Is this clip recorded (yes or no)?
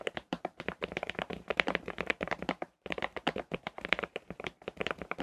no